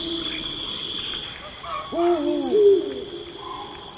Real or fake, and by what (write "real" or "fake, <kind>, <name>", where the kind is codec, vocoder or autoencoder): real